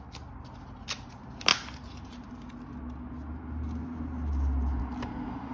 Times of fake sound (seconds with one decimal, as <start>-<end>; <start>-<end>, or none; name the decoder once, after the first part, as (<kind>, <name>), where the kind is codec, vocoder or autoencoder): none